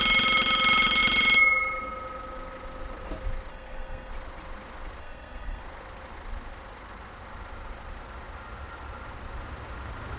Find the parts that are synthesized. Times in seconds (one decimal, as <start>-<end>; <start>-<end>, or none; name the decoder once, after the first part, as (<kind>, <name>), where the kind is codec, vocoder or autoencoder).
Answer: 3.5-4.1 (codec, SNAC); 5.0-5.6